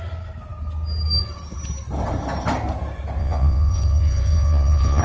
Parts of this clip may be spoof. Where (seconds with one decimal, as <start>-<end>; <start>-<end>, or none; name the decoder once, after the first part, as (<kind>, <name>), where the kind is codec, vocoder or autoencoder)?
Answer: 3.2-5.0 (vocoder, Vocos)